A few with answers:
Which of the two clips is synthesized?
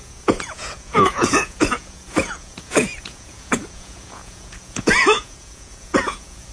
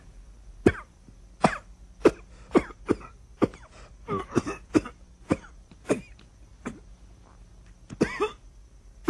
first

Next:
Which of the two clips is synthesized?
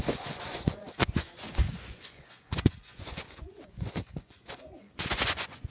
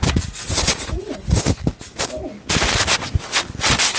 first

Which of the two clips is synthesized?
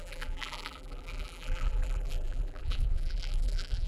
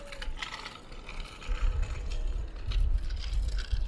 first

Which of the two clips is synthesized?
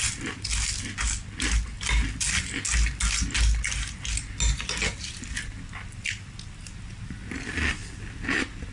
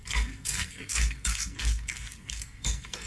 second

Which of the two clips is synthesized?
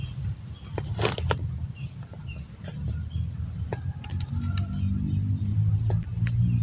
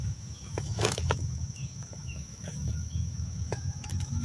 second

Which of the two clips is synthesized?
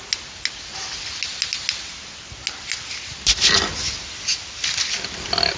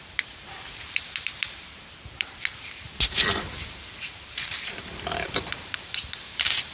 second